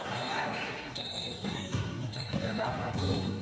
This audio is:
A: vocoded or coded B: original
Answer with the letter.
A